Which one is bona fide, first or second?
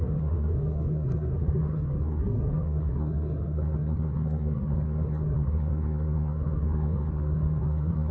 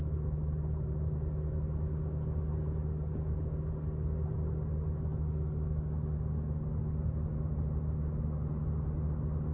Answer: second